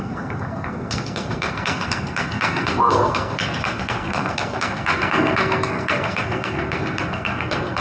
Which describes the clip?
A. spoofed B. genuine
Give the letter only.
A